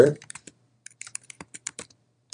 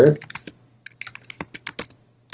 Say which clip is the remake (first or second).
first